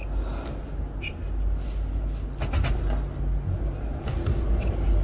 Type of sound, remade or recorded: recorded